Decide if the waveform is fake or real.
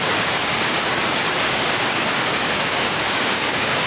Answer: fake